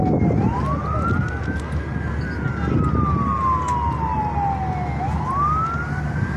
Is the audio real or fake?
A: real